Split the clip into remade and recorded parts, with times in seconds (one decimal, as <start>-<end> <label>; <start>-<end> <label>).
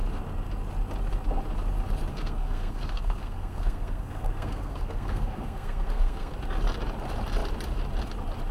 0.0-2.1 recorded; 2.1-6.3 remade; 6.3-8.5 recorded